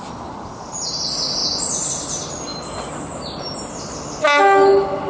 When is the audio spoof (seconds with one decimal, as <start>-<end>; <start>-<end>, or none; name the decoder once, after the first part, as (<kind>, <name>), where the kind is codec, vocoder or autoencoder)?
none